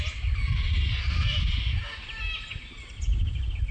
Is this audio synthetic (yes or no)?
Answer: no